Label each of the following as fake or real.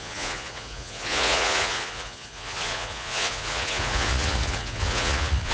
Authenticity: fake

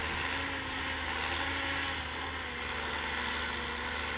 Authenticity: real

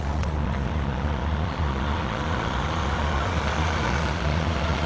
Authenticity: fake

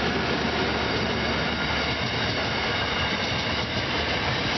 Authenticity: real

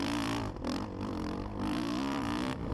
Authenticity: fake